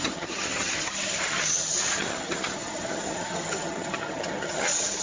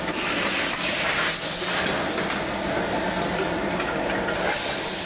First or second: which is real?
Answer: second